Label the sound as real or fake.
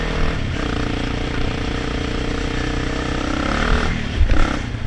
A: real